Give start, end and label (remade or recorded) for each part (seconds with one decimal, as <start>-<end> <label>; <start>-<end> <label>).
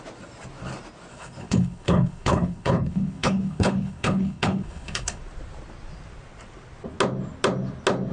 0.0-1.1 recorded; 1.1-5.2 remade; 5.2-8.1 recorded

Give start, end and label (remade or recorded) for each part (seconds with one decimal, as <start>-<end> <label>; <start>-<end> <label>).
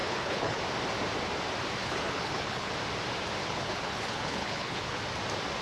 0.0-0.6 remade; 0.6-1.8 recorded; 1.8-2.7 remade; 2.7-3.4 recorded; 3.4-5.0 remade; 5.0-5.6 recorded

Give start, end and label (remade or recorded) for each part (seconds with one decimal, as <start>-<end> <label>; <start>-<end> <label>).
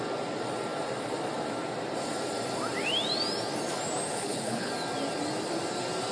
0.0-4.1 recorded; 4.1-4.7 remade; 4.7-6.1 recorded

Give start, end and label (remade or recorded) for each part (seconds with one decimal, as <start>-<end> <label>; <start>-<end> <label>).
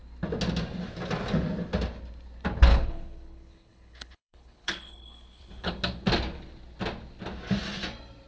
0.0-2.7 recorded; 2.7-5.7 remade; 5.7-8.3 recorded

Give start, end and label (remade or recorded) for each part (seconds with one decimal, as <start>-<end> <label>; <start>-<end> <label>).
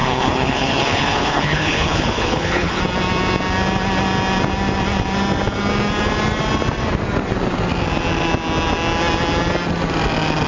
0.0-2.8 remade; 2.8-10.5 recorded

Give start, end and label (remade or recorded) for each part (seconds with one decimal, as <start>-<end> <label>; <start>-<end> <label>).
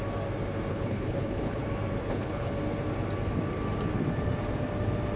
0.0-0.7 recorded; 0.7-1.6 remade; 1.6-2.0 recorded; 2.0-2.5 remade; 2.5-5.2 recorded